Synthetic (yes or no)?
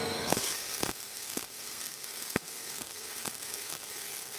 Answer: yes